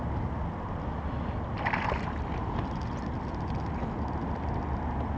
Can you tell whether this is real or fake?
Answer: real